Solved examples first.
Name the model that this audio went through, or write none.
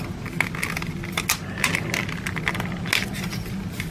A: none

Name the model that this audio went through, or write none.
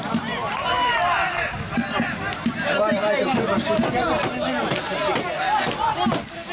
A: none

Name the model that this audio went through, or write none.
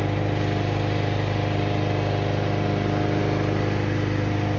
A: none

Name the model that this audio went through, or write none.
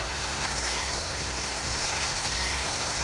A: codec, SNAC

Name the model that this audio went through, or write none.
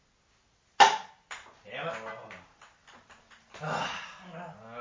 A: none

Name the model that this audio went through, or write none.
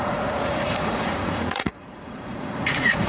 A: vocoder, Vocos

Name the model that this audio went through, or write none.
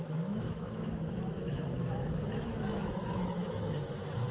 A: autoencoder, DAC-VAE